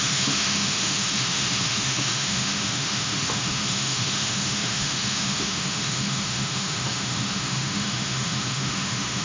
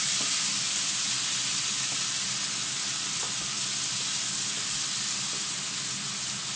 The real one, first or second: second